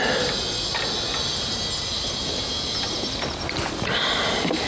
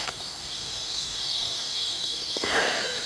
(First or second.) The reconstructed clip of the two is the second